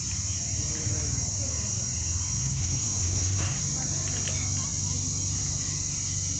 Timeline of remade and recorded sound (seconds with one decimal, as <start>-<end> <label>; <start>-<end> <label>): 0.0-2.4 recorded; 2.4-3.6 remade; 3.6-6.4 recorded